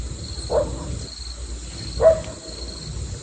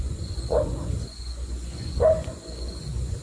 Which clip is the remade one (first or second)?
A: second